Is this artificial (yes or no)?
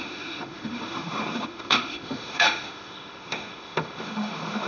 yes